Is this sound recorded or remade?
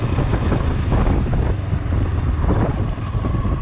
recorded